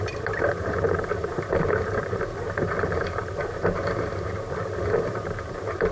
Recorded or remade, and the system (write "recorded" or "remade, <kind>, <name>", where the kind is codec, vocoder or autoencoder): remade, vocoder, BigVGAN v2